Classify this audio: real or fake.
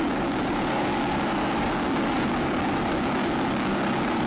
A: fake